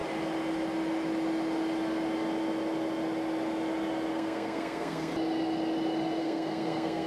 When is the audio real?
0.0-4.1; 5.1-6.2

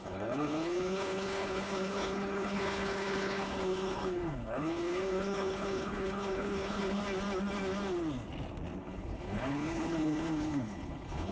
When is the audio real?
7.0-8.8

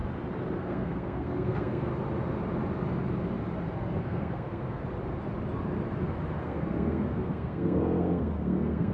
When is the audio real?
0.0-0.6; 1.9-4.0; 4.8-6.4